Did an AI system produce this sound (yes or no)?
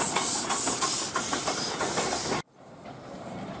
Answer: no